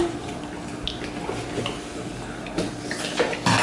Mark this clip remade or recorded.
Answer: recorded